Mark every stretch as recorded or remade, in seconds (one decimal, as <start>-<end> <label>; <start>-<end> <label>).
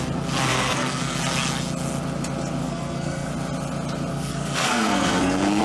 0.0-0.5 recorded; 0.5-1.2 remade; 1.2-2.6 recorded; 2.6-3.3 remade; 3.3-4.1 recorded; 4.1-5.6 remade